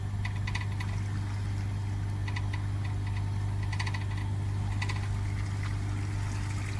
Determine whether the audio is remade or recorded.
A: recorded